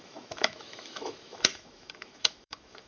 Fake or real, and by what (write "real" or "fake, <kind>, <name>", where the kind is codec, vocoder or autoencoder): fake, autoencoder, DAC-VAE